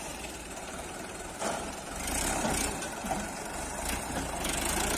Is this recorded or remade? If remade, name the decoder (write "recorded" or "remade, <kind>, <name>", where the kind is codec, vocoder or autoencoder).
remade, vocoder, BigVGAN v2